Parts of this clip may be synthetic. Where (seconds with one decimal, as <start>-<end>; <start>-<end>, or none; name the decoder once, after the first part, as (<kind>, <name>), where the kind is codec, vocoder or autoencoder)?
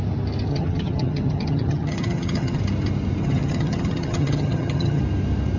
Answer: 0.5-2.6 (vocoder, HiFi-GAN); 3.2-5.0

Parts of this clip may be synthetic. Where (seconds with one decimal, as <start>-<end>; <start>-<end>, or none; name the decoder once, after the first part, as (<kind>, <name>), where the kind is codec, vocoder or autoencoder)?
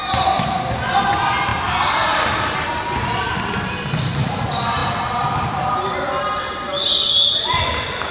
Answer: none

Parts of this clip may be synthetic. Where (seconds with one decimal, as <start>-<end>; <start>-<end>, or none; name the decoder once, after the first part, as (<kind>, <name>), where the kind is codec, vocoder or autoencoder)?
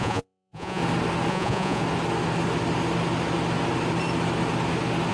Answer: 0.0-0.8 (vocoder, Vocos); 1.3-1.8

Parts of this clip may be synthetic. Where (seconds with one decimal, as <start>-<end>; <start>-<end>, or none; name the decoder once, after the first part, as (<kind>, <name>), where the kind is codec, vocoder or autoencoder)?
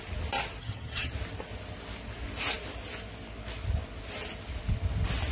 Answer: 0.6-1.1 (vocoder, HiFi-GAN)